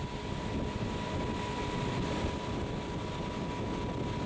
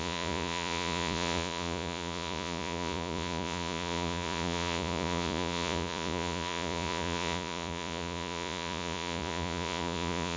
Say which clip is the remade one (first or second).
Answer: second